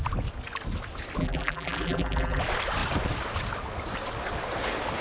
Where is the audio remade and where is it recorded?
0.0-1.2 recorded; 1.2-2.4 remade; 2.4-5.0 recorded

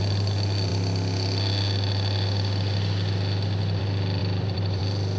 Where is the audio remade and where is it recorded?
0.0-4.2 recorded; 4.2-4.8 remade; 4.8-5.2 recorded

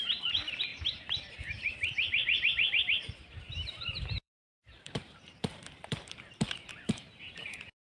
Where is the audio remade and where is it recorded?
0.0-0.7 remade; 0.7-1.3 recorded; 1.3-7.9 remade

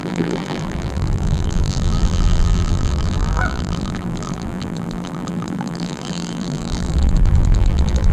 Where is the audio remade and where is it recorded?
0.0-8.1 remade

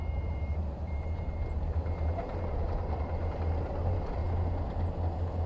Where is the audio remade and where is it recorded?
0.0-4.2 remade; 4.2-5.5 recorded

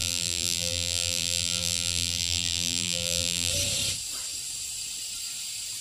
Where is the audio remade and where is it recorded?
0.0-3.5 remade; 3.5-5.8 recorded

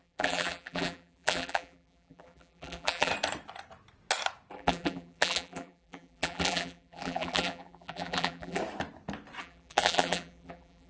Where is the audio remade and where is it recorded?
0.0-3.1 remade; 3.1-4.5 recorded; 4.5-8.6 remade; 8.6-9.4 recorded; 9.4-10.9 remade

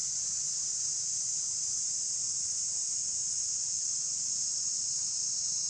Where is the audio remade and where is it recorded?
0.0-5.7 remade